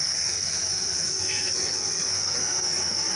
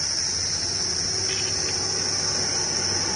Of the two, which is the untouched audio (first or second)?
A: second